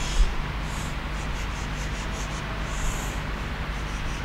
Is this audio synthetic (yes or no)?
no